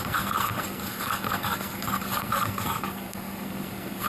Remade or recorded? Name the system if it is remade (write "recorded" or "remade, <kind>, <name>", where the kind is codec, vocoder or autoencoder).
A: remade, codec, SNAC